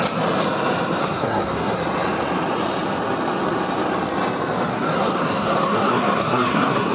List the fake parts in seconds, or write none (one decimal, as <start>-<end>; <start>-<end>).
1.0-1.8; 4.7-6.9